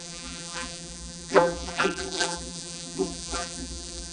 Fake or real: fake